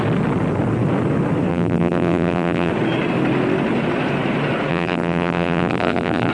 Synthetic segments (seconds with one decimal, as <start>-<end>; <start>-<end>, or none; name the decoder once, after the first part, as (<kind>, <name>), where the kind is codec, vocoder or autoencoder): 1.5-2.7 (vocoder, BigVGAN v2); 4.7-6.3